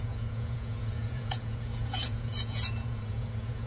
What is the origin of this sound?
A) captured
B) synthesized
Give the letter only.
B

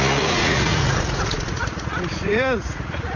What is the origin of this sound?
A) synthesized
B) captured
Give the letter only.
A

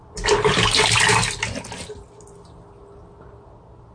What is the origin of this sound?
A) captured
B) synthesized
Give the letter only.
A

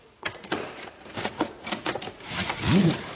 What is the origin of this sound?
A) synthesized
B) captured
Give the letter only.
A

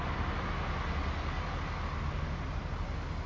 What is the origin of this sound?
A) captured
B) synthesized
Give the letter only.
A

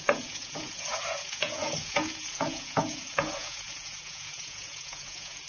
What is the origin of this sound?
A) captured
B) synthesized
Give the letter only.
B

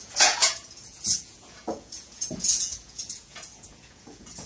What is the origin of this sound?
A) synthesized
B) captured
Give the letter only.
A